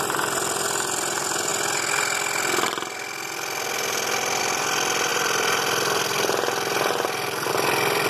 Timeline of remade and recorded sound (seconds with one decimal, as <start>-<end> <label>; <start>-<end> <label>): 0.0-1.5 remade; 1.5-4.4 recorded; 4.4-8.1 remade